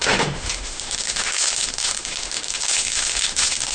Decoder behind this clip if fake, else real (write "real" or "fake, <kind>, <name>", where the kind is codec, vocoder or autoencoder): fake, autoencoder, DAC-VAE